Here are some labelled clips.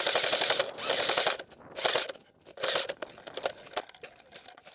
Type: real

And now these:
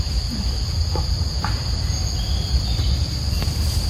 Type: real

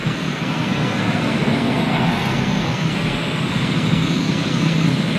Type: fake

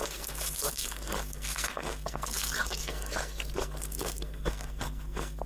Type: fake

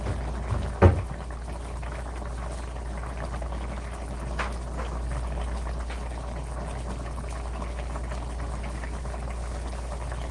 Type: real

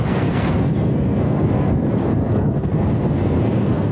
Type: fake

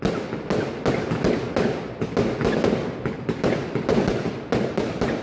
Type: real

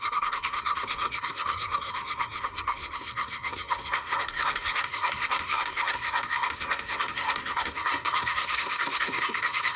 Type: fake